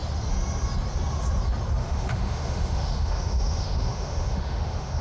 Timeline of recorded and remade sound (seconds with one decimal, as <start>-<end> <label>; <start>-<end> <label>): 0.0-1.8 recorded; 1.8-5.0 remade